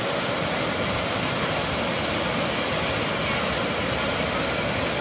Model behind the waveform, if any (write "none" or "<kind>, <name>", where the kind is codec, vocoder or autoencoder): none